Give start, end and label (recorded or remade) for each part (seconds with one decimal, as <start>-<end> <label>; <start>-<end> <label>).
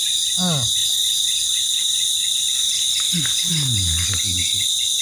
0.0-5.0 recorded